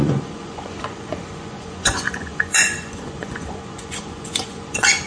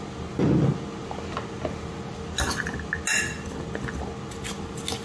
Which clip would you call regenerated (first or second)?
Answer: first